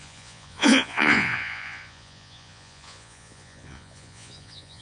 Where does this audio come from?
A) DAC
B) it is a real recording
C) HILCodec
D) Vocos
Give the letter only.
D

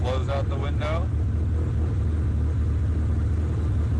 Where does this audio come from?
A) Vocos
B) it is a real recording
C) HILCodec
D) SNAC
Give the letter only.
B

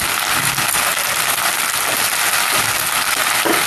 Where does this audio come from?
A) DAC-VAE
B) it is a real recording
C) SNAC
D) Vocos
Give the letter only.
B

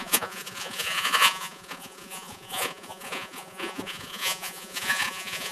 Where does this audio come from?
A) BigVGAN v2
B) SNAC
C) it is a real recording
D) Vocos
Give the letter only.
D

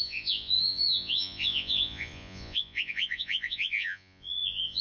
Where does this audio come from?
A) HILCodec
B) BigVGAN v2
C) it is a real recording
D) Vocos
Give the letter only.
D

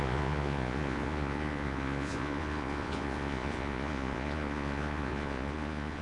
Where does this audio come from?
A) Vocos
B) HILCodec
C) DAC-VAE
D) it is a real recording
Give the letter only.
A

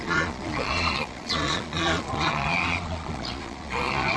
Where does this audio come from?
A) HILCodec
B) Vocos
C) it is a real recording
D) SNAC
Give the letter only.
B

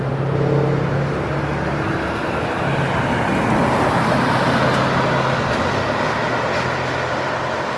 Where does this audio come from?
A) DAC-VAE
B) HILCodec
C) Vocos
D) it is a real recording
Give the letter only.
D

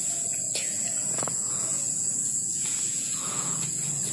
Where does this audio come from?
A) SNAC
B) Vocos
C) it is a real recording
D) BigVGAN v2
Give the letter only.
B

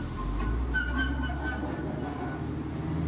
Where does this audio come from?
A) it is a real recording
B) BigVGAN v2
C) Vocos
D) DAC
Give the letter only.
A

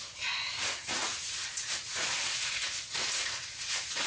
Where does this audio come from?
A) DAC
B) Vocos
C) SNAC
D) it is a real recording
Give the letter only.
B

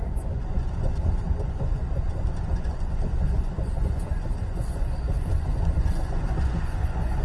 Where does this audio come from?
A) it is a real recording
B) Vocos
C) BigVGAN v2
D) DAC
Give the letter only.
B